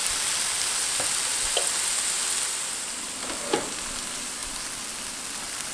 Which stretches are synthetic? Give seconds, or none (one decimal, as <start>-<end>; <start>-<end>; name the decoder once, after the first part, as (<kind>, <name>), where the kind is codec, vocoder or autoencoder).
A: 2.9-4.4 (vocoder, BigVGAN v2); 5.1-5.7